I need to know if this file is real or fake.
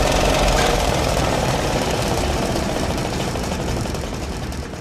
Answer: fake